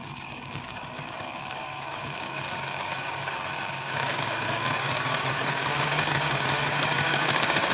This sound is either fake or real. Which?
fake